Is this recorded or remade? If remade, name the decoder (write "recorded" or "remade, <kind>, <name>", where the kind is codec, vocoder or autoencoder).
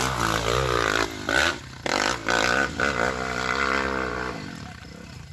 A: recorded